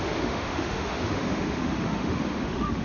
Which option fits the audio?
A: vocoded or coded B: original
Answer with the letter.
A